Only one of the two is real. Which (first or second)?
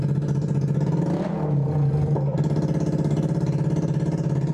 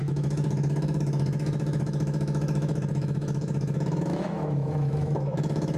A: first